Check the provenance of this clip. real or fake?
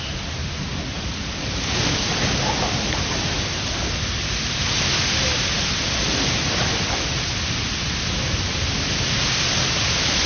real